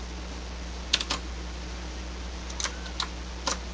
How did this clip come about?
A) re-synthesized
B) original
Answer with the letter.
B